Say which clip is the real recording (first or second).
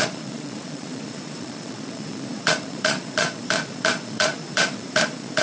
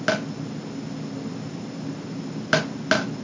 second